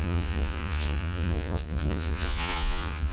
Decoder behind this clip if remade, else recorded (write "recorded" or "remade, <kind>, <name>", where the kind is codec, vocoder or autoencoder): remade, vocoder, Vocos